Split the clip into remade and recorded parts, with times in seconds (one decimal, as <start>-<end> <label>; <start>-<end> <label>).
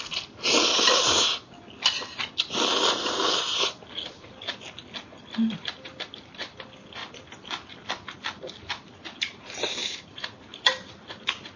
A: 0.0-9.8 recorded; 9.8-11.2 remade; 11.2-11.6 recorded